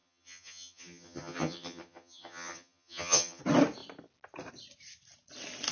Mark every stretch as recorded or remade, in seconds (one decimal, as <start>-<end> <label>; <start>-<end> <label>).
0.0-3.4 remade; 3.4-5.7 recorded